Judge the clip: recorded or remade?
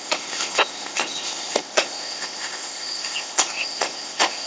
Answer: remade